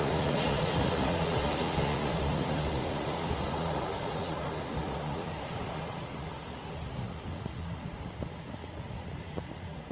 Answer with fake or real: fake